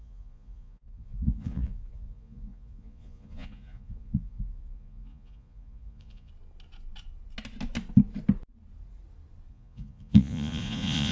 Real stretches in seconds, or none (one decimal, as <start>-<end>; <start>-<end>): 6.3-9.5